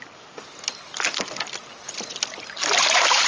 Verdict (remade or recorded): recorded